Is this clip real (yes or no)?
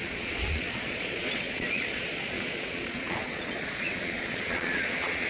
no